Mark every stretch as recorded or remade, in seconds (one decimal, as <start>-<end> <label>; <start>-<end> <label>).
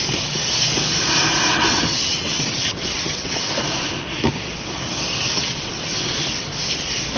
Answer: 0.0-1.5 recorded; 1.5-3.5 remade; 3.5-5.4 recorded; 5.4-6.4 remade; 6.4-7.2 recorded